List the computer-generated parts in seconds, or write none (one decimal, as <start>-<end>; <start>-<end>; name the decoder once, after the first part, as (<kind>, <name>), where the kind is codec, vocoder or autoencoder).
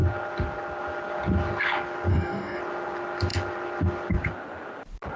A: 2.1-2.6 (codec, DAC)